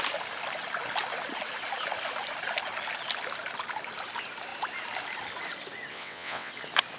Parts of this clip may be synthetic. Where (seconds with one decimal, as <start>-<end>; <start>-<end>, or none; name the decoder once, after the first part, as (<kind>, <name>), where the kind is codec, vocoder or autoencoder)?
5.9-6.5 (vocoder, WaveNeXt)